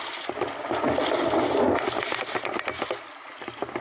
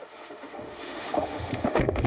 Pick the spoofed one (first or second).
second